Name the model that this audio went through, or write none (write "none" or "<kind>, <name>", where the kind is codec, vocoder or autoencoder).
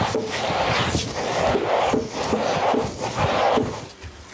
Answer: none